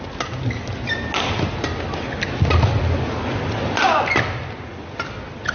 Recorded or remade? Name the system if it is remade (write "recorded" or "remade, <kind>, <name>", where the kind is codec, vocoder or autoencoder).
recorded